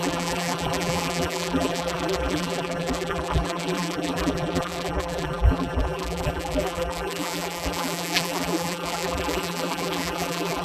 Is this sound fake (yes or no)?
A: yes